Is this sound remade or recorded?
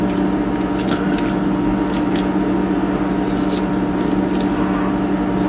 recorded